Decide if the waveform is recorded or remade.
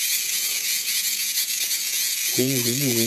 remade